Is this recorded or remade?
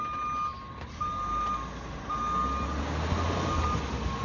recorded